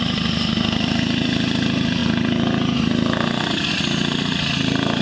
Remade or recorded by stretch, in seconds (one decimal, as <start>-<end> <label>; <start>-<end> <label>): 0.0-5.0 remade